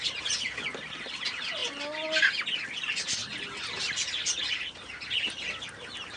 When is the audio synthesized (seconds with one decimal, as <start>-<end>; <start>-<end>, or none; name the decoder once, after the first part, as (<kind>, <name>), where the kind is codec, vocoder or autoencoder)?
none